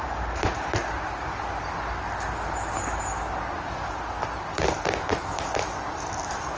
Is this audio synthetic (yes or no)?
no